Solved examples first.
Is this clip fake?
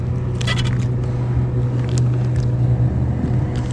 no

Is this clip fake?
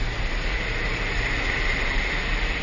no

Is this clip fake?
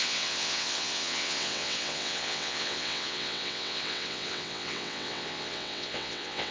yes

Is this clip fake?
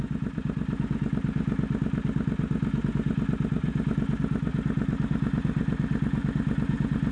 no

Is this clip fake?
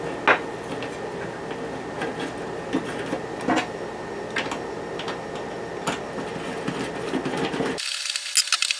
no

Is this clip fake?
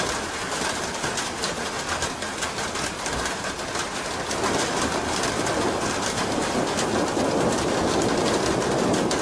no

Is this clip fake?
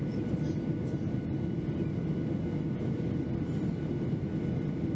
no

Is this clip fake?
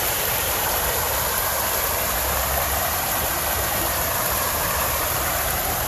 yes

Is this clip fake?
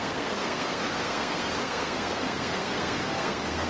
yes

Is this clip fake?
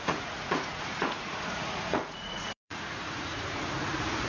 yes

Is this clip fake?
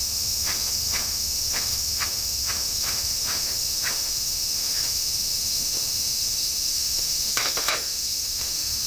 yes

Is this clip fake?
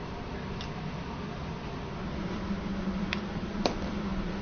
yes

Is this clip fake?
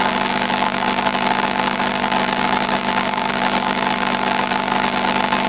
yes